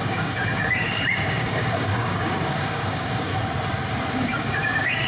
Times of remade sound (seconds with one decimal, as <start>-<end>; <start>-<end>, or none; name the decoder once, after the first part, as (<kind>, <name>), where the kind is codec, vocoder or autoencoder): 0.0-3.3 (codec, DAC); 4.1-5.1